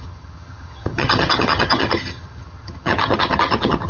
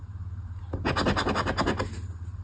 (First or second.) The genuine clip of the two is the second